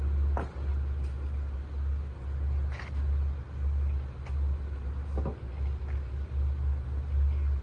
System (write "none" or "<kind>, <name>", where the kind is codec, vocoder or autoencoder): none